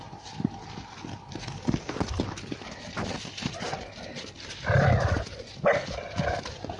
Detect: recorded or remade recorded